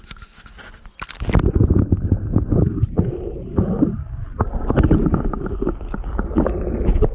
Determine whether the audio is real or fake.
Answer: real